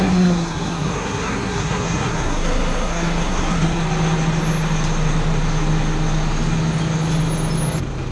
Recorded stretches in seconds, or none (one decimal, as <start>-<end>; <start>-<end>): 3.8-8.1